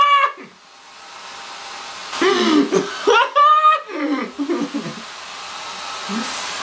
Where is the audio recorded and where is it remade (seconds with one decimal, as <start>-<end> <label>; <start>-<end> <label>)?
0.0-6.6 recorded